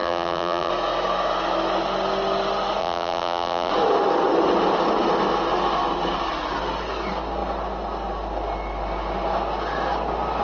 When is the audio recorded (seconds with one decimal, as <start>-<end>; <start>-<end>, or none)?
0.7-2.8; 3.7-10.4